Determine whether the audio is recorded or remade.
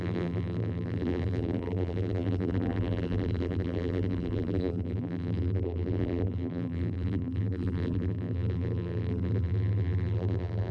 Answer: remade